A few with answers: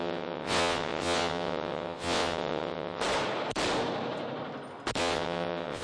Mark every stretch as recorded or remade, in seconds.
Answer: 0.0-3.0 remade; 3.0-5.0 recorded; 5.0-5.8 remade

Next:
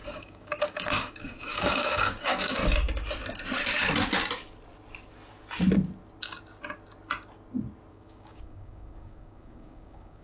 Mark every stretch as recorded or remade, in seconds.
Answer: 0.0-2.6 remade; 2.6-7.9 recorded; 7.9-10.2 remade

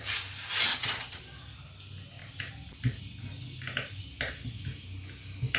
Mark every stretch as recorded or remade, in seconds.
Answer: 0.0-0.7 recorded; 0.7-1.2 remade; 1.2-5.6 recorded

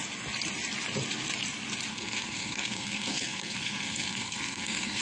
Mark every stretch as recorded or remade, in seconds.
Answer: 0.0-1.9 recorded; 1.9-5.0 remade

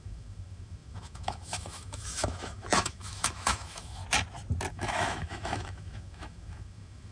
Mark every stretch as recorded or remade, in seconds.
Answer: 0.0-4.0 remade; 4.0-4.7 recorded; 4.7-7.1 remade

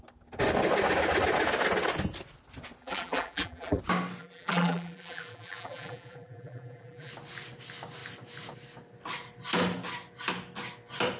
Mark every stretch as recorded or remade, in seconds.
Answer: 0.0-2.8 recorded; 2.8-3.8 remade; 3.8-4.2 recorded; 4.2-7.1 remade; 7.1-11.2 recorded